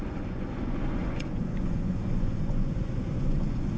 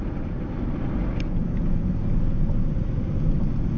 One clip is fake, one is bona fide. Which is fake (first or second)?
first